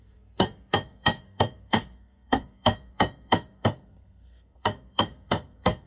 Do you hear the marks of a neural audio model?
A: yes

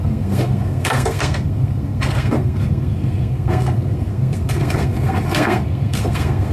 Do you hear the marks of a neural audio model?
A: yes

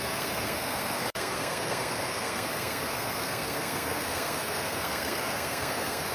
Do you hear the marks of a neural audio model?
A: yes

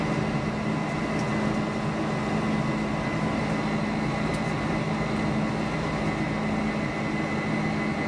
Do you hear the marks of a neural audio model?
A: no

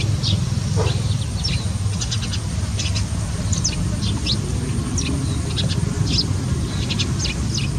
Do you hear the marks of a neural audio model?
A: no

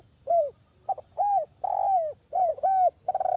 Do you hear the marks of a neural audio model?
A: no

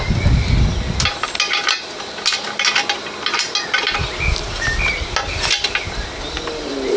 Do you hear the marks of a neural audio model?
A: no